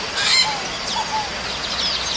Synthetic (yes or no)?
no